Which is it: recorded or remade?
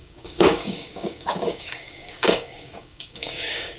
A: remade